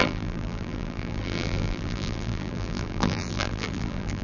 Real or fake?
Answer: fake